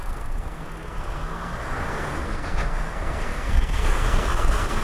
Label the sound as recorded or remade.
remade